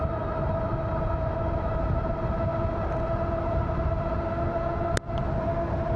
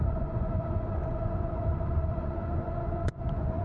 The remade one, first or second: second